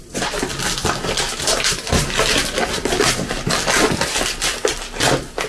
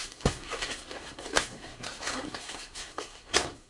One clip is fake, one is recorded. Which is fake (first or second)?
second